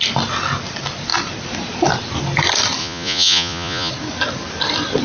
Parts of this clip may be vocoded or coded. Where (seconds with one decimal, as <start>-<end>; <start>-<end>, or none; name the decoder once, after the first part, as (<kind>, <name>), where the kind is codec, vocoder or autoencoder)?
2.8-3.9 (vocoder, Vocos)